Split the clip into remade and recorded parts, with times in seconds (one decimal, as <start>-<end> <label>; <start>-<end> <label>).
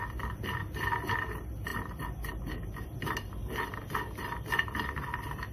0.0-5.5 recorded